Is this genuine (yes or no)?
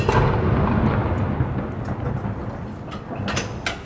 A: yes